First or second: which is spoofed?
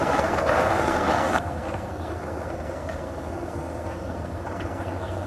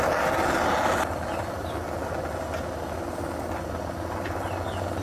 first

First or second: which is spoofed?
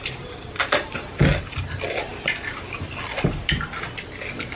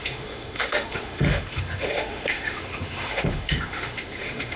second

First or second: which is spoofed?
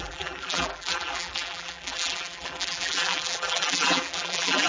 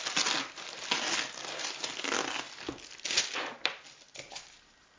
first